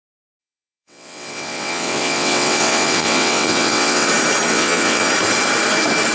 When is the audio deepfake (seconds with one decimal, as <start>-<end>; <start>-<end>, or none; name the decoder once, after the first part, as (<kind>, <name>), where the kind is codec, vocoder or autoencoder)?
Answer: 0.4-4.1 (vocoder, WaveNeXt); 4.5-5.1